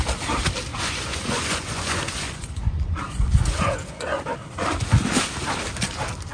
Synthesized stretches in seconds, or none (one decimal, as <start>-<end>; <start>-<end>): 0.7-4.2